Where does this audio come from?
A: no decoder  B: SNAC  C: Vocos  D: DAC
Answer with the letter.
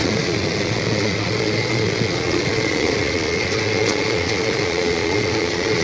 C